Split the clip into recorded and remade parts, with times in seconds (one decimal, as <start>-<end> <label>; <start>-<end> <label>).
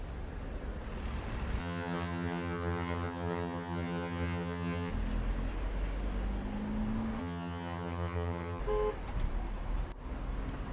0.0-1.6 recorded; 1.6-4.9 remade; 4.9-7.2 recorded; 7.2-8.6 remade; 8.6-10.7 recorded